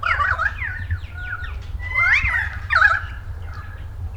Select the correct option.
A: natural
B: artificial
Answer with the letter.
B